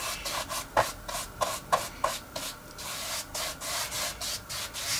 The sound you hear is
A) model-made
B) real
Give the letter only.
B